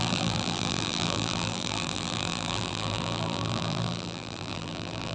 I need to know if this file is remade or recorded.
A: remade